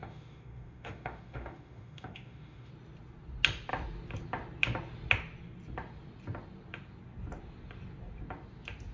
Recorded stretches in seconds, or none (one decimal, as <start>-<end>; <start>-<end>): 2.7-8.9